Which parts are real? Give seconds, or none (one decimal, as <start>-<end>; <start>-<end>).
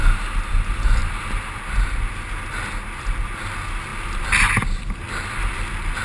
0.0-6.0